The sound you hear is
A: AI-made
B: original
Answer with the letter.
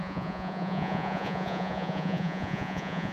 A